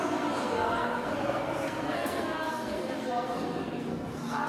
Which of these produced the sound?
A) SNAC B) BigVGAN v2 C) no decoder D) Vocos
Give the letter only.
A